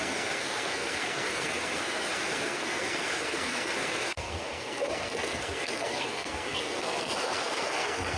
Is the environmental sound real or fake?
fake